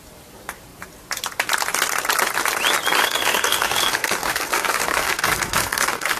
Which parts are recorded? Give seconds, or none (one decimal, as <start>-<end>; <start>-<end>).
0.0-3.0